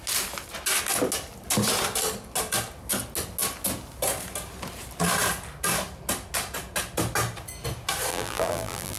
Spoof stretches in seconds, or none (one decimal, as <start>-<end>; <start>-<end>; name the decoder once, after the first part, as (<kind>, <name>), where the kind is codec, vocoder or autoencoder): 8.1-9.0 (vocoder, BigVGAN v2)